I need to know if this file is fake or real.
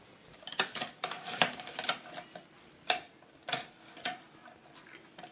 real